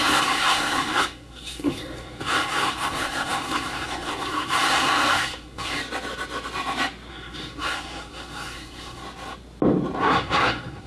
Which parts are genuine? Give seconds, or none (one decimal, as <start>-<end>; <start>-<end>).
5.8-7.1; 9.0-10.0